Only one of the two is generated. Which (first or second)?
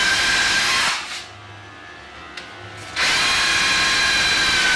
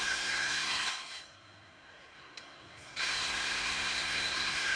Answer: second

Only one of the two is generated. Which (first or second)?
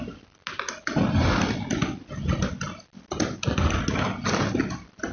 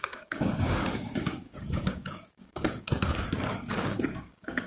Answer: second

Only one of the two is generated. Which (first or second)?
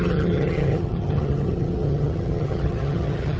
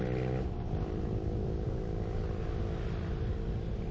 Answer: first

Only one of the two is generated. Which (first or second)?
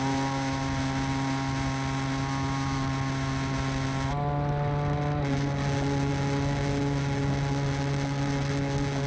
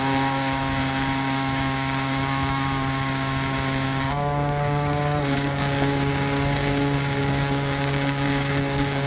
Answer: second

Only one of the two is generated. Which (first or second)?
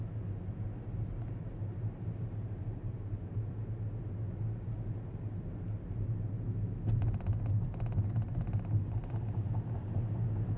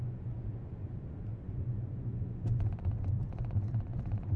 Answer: second